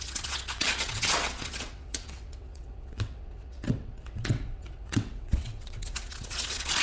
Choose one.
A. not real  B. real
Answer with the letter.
A